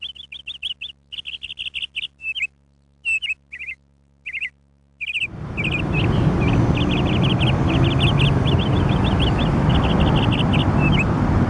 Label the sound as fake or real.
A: real